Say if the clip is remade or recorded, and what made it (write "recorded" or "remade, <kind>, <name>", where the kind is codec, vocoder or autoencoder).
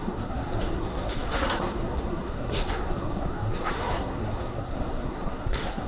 remade, codec, SNAC